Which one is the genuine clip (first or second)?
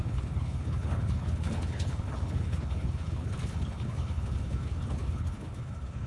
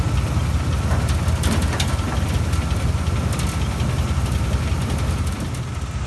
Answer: second